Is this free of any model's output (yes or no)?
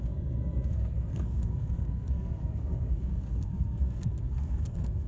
no